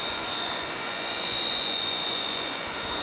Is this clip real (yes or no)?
no